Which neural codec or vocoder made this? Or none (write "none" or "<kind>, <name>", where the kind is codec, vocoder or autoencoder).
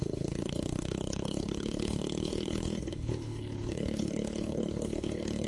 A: codec, HILCodec